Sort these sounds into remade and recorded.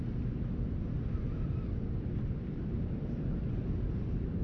recorded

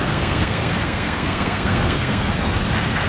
remade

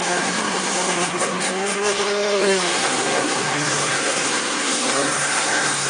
remade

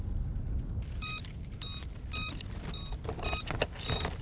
recorded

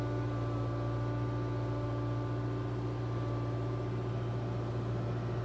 recorded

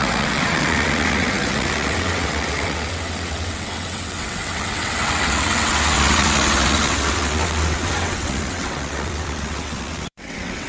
remade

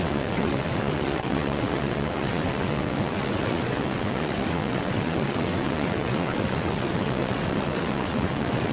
remade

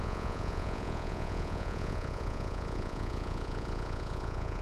remade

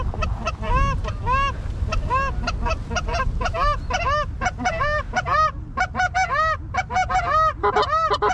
recorded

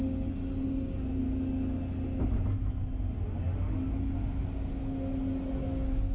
recorded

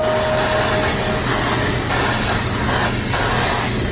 recorded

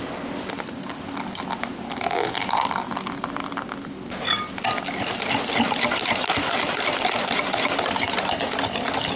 recorded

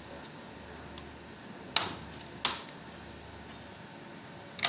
recorded